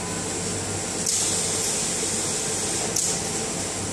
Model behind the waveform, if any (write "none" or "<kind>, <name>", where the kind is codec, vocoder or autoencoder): none